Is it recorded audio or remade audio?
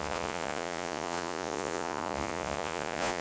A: remade